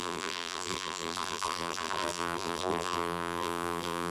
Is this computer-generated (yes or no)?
yes